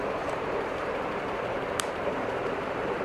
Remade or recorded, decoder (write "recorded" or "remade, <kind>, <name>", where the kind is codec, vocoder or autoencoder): remade, vocoder, BigVGAN v2